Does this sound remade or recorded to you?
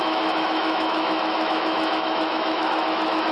remade